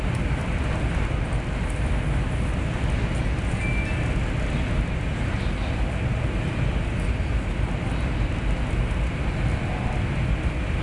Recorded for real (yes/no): yes